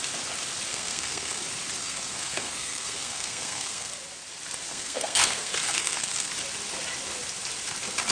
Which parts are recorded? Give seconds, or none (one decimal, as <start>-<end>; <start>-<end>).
0.0-0.7; 1.4-1.8; 3.9-4.7; 6.3-8.1